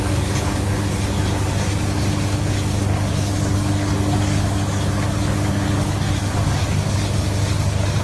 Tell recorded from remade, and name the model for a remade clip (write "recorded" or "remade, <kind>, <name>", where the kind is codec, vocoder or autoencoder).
remade, codec, DAC